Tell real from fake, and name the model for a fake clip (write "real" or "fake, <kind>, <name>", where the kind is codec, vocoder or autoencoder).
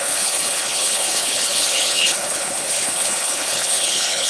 fake, codec, HILCodec